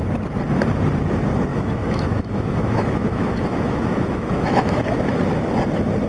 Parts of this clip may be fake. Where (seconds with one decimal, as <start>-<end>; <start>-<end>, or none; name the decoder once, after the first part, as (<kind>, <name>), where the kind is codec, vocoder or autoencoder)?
1.5-5.2 (autoencoder, DAC-VAE)